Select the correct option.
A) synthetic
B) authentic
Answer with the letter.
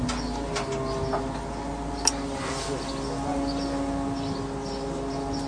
B